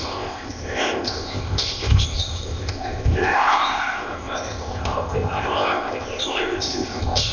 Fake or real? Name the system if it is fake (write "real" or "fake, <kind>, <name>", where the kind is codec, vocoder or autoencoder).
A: fake, codec, ZipCodec